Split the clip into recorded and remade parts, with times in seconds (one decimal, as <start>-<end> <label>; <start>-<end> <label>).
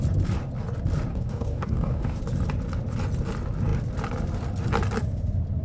0.0-1.1 recorded; 1.1-2.2 remade; 2.2-5.6 recorded